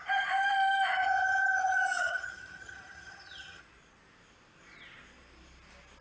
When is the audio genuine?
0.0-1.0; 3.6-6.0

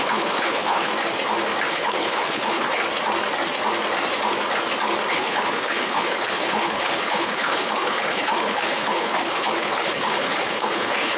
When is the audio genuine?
0.9-1.7; 2.8-5.1

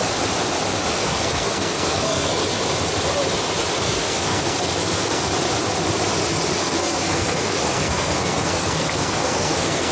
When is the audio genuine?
0.0-0.9; 2.4-3.8; 5.3-6.6